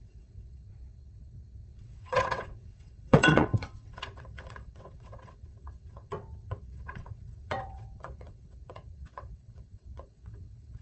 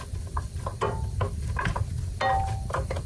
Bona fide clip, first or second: second